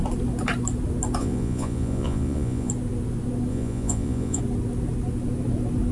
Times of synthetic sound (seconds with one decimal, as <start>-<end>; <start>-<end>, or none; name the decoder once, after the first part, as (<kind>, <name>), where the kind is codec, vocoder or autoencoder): 1.2-2.7 (vocoder, Vocos); 3.5-4.4